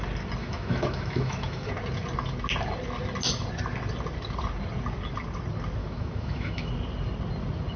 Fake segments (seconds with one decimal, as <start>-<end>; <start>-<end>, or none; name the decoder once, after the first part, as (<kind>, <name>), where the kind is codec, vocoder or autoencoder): 0.4-1.7 (autoencoder, DAC-VAE); 5.8-6.7